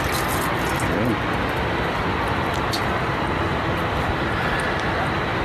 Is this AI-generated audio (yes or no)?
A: no